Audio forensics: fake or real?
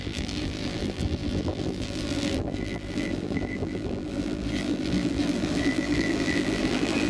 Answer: fake